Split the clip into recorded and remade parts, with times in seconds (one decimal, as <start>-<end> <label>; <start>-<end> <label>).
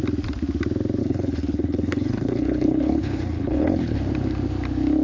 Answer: 0.0-1.0 recorded; 1.0-4.0 remade; 4.0-5.0 recorded